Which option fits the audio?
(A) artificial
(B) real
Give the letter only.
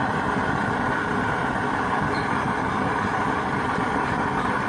B